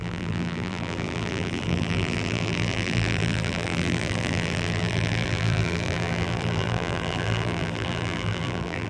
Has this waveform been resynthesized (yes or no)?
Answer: yes